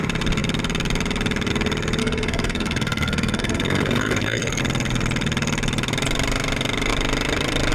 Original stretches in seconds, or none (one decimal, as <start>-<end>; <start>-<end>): 0.0-2.0; 4.6-7.7